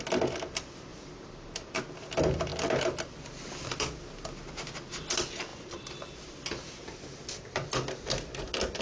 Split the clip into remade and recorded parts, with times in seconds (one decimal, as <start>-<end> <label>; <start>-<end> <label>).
0.0-0.9 recorded; 0.9-1.8 remade; 1.8-5.5 recorded; 5.5-7.7 remade; 7.7-8.8 recorded